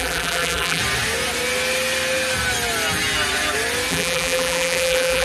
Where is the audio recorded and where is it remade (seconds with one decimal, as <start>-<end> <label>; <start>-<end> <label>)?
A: 0.0-0.8 remade; 0.8-3.9 recorded; 3.9-5.2 remade